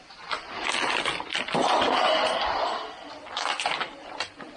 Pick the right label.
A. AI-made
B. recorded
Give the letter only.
B